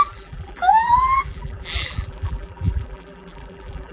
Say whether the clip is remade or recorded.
remade